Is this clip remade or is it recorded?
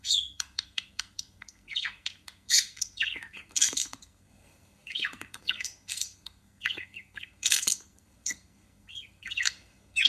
remade